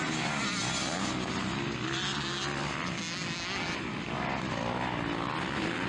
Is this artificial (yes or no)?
no